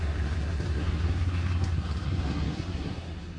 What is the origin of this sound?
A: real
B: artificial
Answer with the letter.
B